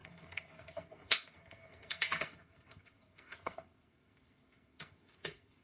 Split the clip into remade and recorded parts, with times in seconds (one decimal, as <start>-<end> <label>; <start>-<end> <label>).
0.0-5.6 remade